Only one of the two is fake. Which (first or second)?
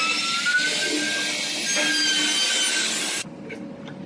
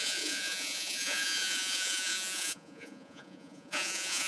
second